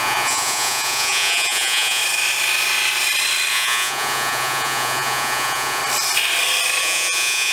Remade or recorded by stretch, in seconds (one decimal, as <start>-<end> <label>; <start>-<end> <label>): 0.0-2.0 remade; 2.0-3.5 recorded; 3.5-5.8 remade; 5.8-6.8 recorded; 6.8-7.5 remade